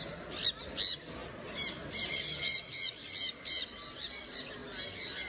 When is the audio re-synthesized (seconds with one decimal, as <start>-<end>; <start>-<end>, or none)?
none